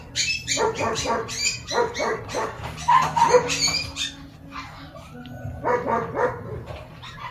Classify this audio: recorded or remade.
recorded